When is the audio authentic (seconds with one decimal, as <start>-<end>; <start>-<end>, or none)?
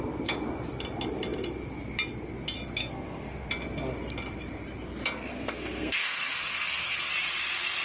0.0-2.8; 3.5-5.3; 7.0-7.8